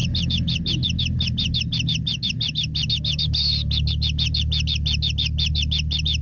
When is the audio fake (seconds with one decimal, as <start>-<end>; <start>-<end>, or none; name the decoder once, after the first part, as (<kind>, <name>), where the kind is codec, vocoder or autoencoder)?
none